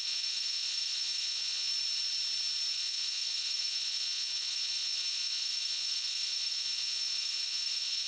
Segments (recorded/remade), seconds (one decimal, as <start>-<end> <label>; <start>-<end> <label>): 0.0-1.7 remade; 1.7-2.7 recorded; 2.7-8.1 remade